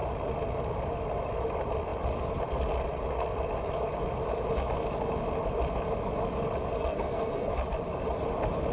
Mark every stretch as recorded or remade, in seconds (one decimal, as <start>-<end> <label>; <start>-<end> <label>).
0.0-6.8 recorded; 6.8-7.5 remade; 7.5-8.7 recorded